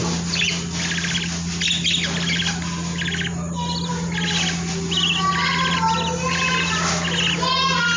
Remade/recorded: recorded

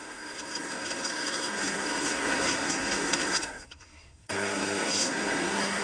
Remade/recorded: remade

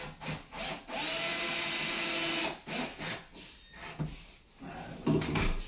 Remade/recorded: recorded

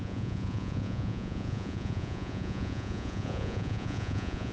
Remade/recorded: remade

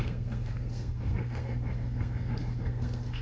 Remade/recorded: remade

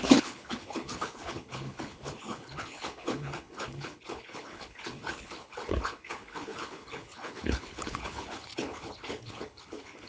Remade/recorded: remade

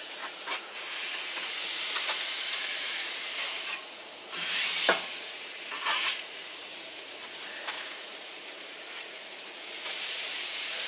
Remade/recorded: remade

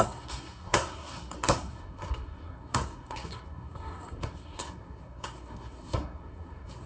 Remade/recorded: remade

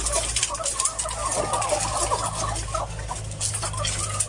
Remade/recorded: recorded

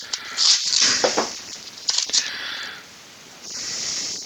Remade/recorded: remade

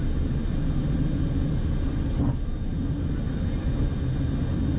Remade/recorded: recorded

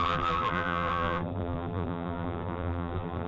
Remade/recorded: remade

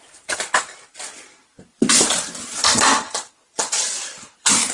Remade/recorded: remade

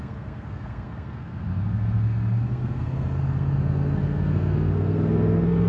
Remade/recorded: remade